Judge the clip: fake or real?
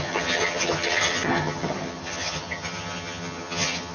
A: fake